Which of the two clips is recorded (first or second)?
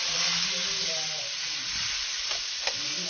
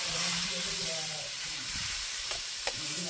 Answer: first